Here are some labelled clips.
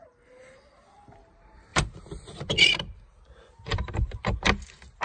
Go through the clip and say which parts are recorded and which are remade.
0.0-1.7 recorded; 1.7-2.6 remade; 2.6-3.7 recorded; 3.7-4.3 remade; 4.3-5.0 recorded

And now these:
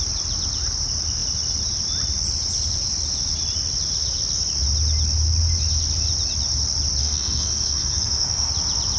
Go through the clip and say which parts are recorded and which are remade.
0.0-7.0 recorded; 7.0-8.5 remade; 8.5-9.0 recorded

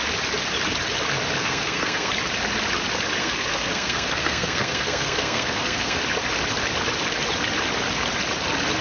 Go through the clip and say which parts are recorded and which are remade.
0.0-1.4 recorded; 1.4-2.1 remade; 2.1-3.2 recorded; 3.2-6.0 remade; 6.0-8.8 recorded

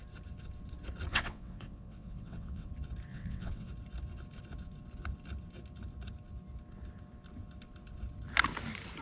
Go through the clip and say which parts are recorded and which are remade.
0.0-1.1 recorded; 1.1-2.7 remade; 2.7-3.1 recorded; 3.1-3.7 remade; 3.7-9.0 recorded

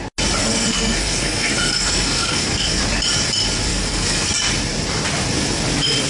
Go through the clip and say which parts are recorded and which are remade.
0.0-0.4 recorded; 0.4-2.8 remade; 2.8-3.7 recorded; 3.7-4.3 remade; 4.3-6.1 recorded

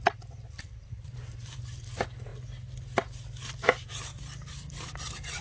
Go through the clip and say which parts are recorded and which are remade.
0.0-2.3 remade; 2.3-3.5 recorded; 3.5-5.4 remade

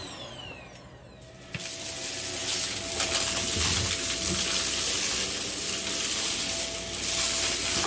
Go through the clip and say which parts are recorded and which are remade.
0.0-2.4 recorded; 2.4-3.1 remade; 3.1-5.1 recorded; 5.1-6.4 remade; 6.4-7.9 recorded